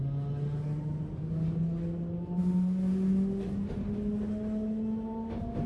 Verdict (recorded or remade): recorded